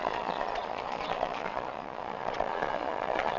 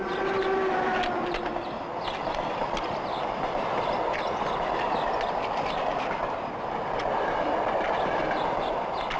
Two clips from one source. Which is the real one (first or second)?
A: second